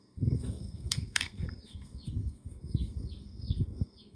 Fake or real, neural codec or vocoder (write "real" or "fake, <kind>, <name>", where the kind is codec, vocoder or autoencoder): fake, codec, SNAC